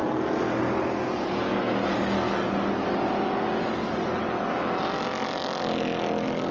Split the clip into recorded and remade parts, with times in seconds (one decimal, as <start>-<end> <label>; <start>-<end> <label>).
0.0-6.5 recorded